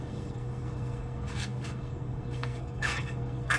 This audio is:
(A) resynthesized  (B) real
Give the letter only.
A